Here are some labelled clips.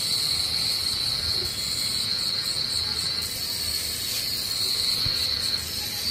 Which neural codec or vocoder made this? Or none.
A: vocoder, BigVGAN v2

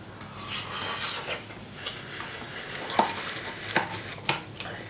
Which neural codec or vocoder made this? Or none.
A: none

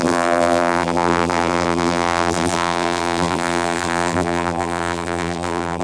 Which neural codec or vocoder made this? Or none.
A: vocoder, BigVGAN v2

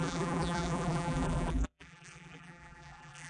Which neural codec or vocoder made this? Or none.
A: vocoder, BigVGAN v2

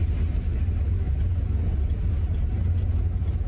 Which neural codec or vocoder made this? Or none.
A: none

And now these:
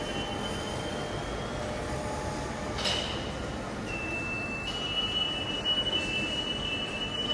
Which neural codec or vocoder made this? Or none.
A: none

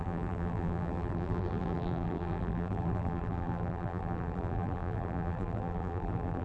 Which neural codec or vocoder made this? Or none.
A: vocoder, BigVGAN v2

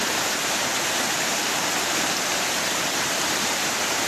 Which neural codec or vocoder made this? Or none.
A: vocoder, BigVGAN v2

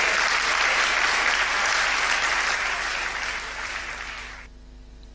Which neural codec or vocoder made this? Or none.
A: vocoder, BigVGAN v2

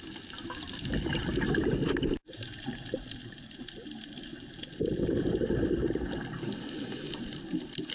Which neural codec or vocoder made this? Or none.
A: vocoder, BigVGAN v2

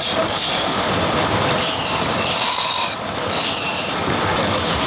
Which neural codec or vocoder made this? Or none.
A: vocoder, BigVGAN v2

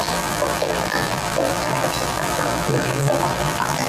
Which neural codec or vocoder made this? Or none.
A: vocoder, BigVGAN v2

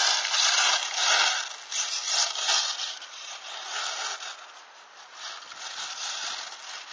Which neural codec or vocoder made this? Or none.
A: none